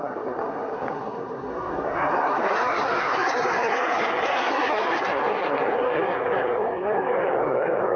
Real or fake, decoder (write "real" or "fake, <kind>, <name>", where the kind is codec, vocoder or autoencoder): fake, codec, SNAC